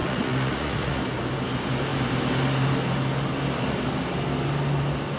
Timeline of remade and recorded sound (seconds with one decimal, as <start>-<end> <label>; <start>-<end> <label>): 0.0-1.0 remade; 1.0-5.2 recorded